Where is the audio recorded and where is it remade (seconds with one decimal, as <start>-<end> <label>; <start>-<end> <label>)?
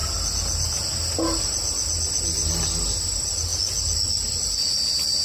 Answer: 0.0-5.2 recorded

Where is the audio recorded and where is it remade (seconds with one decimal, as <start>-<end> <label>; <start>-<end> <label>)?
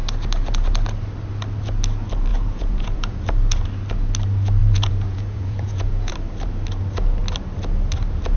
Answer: 0.0-2.3 recorded; 2.3-3.2 remade; 3.2-4.6 recorded; 4.6-6.1 remade; 6.1-8.4 recorded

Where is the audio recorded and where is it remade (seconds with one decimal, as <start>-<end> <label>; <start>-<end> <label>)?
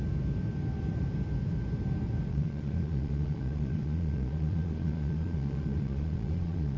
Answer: 0.0-2.3 recorded; 2.3-6.8 remade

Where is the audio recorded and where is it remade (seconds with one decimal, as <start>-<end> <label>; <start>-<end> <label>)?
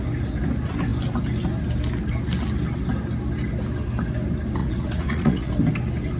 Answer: 0.0-4.6 recorded; 4.6-5.5 remade; 5.5-6.2 recorded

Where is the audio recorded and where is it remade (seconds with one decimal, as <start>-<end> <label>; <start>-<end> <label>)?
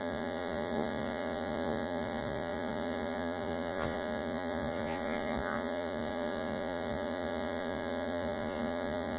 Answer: 0.0-9.2 remade